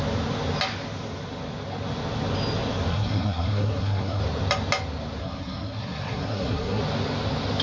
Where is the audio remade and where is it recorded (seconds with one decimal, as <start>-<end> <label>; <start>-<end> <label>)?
0.0-2.9 recorded; 2.9-4.2 remade; 4.2-5.2 recorded; 5.2-6.8 remade; 6.8-7.6 recorded